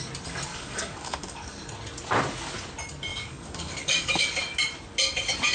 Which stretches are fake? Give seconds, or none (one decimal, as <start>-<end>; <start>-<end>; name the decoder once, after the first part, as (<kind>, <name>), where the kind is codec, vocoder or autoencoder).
0.5-1.7 (codec, DAC); 3.1-4.4